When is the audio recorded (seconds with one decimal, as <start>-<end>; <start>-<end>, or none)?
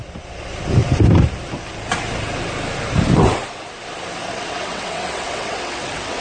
0.0-4.3